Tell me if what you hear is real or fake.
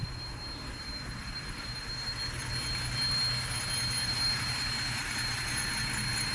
real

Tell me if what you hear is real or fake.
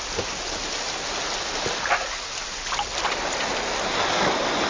real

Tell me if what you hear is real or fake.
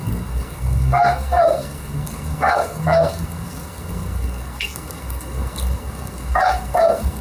fake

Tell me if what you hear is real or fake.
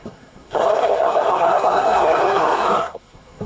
fake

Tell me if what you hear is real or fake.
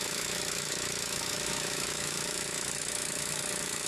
fake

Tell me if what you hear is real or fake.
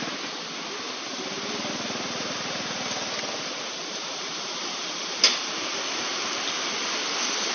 real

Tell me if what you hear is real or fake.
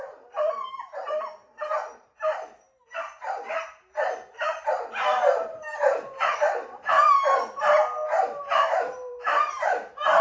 fake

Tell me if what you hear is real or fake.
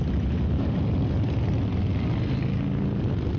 real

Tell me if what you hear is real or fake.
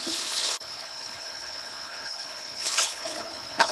fake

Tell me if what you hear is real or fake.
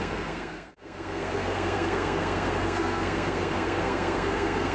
fake